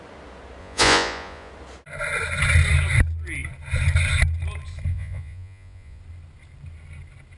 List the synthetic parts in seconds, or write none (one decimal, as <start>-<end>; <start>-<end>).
0.6-1.5; 4.9-6.0